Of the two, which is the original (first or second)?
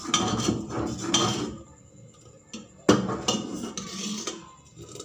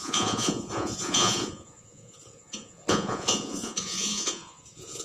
first